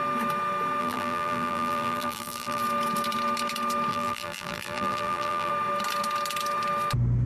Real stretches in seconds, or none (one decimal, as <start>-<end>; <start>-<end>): 0.0-0.8; 2.6-3.9; 5.5-7.3